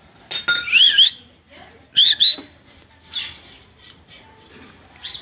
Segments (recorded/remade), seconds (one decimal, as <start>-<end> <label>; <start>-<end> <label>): 0.0-5.2 recorded